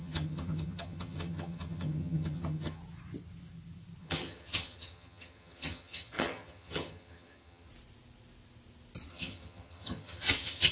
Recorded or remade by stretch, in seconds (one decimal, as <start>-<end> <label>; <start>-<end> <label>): 0.0-2.8 remade; 2.8-4.0 recorded; 4.0-7.7 remade; 7.7-9.1 recorded; 9.1-10.7 remade